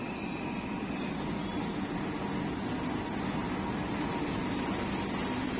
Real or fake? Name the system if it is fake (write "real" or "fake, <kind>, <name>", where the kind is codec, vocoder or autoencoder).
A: real